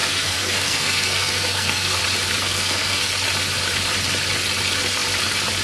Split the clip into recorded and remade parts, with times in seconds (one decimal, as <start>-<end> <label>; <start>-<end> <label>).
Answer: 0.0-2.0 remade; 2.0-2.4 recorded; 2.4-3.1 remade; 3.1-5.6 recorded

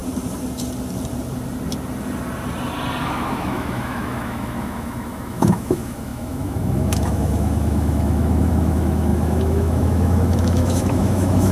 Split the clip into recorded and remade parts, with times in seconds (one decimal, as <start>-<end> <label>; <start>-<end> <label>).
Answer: 0.0-3.0 recorded; 3.0-11.5 remade

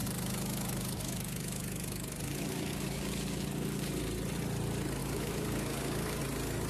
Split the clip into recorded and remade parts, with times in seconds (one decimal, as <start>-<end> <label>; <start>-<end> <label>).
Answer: 0.0-4.0 remade; 4.0-5.0 recorded; 5.0-6.2 remade; 6.2-6.7 recorded

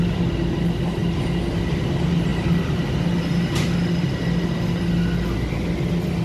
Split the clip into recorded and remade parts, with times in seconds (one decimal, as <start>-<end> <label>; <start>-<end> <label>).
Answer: 0.0-6.2 recorded

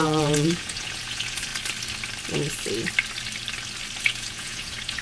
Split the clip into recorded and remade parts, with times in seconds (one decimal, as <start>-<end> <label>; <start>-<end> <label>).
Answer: 0.0-1.5 remade; 1.5-4.0 recorded; 4.0-5.0 remade